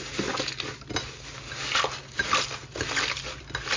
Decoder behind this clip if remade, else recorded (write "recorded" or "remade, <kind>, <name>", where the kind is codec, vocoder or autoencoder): recorded